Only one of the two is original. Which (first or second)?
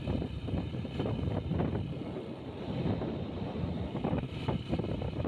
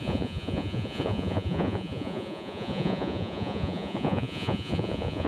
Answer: first